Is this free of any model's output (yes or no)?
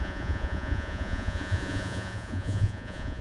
no